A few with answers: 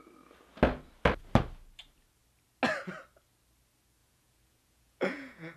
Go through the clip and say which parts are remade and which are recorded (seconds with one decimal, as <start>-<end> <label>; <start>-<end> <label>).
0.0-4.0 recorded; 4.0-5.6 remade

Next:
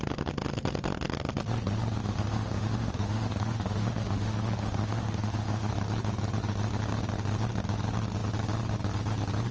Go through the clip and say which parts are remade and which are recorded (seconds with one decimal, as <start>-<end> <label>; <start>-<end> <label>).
0.0-2.0 recorded; 2.0-5.7 remade; 5.7-9.5 recorded

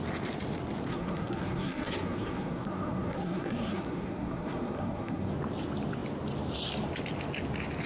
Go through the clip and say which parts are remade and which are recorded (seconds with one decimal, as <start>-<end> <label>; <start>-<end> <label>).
0.0-0.9 recorded; 0.9-5.3 remade; 5.3-7.9 recorded

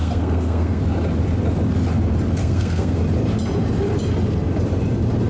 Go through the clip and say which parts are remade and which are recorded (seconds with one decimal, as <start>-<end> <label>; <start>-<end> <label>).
0.0-0.8 remade; 0.8-2.4 recorded; 2.4-3.0 remade; 3.0-5.3 recorded

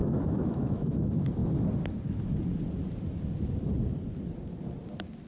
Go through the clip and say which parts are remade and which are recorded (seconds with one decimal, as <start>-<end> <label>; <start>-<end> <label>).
0.0-0.9 remade; 0.9-5.3 recorded

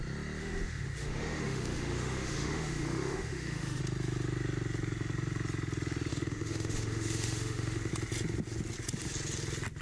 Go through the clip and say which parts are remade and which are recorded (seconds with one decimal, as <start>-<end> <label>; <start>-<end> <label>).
0.0-0.4 recorded; 0.4-3.8 remade; 3.8-6.1 recorded; 6.1-7.9 remade; 7.9-9.8 recorded

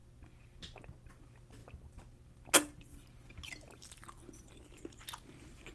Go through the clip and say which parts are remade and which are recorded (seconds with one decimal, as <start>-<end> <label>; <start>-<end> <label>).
0.0-5.7 recorded

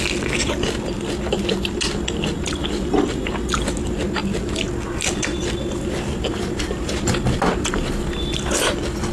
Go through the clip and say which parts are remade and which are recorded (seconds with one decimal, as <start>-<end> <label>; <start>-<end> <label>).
0.0-9.1 recorded